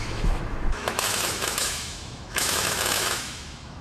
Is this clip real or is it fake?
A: fake